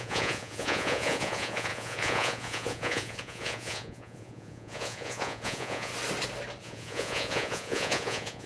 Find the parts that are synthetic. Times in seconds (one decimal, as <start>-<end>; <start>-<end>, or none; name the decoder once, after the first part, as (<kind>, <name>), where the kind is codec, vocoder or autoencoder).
0.0-5.9 (vocoder, Vocos); 6.6-8.5